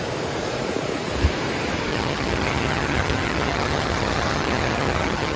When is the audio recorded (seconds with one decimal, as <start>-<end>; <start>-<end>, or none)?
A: 0.0-1.9